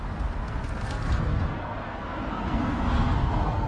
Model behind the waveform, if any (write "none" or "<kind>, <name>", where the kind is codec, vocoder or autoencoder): codec, SNAC